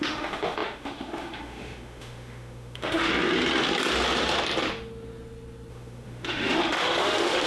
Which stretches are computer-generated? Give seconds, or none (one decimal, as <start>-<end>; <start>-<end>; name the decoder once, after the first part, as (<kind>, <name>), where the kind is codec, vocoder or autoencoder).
0.0-3.1 (autoencoder, DAC-VAE); 5.7-7.5